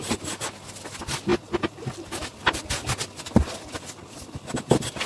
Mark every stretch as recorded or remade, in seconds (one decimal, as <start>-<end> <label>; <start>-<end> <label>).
0.0-1.3 recorded; 1.3-4.4 remade; 4.4-5.1 recorded